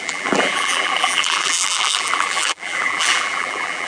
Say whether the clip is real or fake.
fake